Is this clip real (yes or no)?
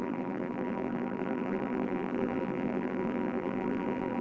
no